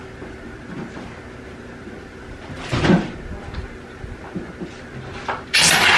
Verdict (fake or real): real